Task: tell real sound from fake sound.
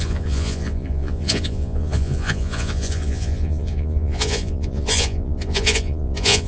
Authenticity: fake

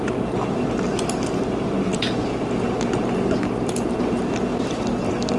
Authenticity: real